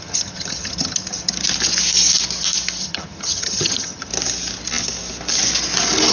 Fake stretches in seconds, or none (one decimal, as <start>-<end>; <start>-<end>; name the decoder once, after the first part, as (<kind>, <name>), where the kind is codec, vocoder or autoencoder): 0.0-1.3 (vocoder, HiFi-GAN); 2.8-4.1